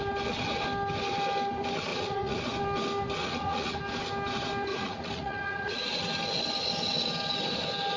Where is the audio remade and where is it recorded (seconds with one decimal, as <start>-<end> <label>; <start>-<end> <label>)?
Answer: 0.0-1.9 recorded; 1.9-2.4 remade; 2.4-3.2 recorded; 3.2-3.8 remade; 3.8-4.7 recorded; 4.7-5.9 remade; 5.9-8.0 recorded